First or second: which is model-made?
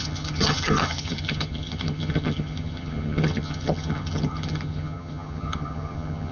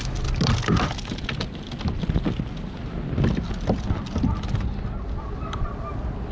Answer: first